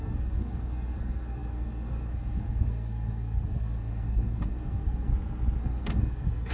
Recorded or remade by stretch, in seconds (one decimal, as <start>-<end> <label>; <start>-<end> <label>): 0.0-5.1 remade; 5.1-5.6 recorded; 5.6-6.5 remade